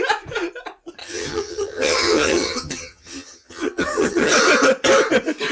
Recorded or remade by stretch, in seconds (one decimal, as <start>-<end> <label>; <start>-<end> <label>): 0.0-1.0 recorded; 1.0-4.3 remade; 4.3-5.5 recorded